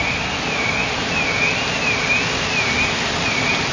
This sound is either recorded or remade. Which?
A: recorded